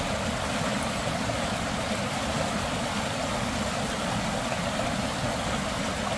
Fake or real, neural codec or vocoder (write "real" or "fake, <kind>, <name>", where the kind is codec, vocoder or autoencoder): real